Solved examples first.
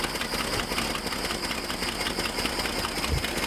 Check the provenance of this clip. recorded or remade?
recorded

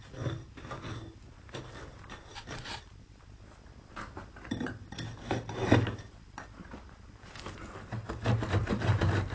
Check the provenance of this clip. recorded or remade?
recorded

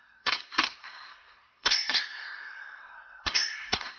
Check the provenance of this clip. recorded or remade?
remade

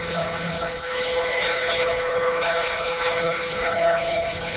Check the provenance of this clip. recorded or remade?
remade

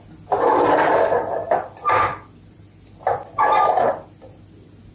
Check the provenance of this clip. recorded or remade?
recorded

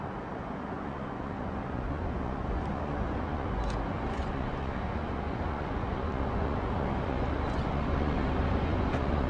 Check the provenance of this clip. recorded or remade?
remade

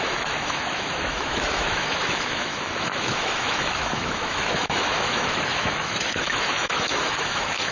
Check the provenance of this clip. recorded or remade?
remade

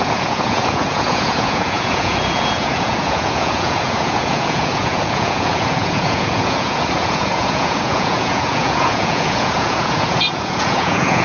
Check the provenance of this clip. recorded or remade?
remade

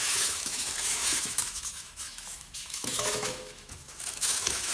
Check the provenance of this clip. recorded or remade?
remade